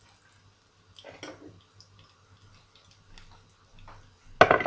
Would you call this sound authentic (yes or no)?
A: yes